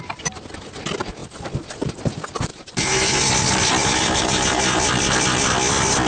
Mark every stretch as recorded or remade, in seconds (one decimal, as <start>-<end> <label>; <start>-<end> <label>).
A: 0.0-2.5 recorded; 2.5-3.2 remade; 3.2-3.8 recorded; 3.8-4.9 remade; 4.9-6.1 recorded